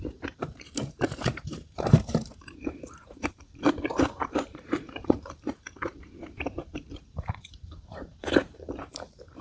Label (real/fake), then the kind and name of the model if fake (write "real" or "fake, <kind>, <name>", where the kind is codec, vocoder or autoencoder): fake, vocoder, BigVGAN v2